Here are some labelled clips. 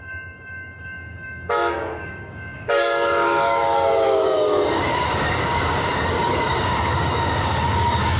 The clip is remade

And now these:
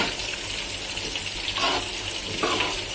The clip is recorded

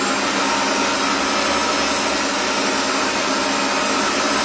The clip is recorded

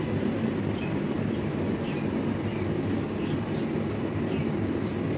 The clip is recorded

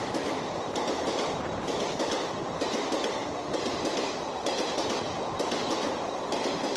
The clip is recorded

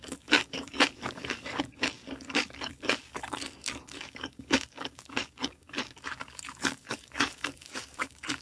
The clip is remade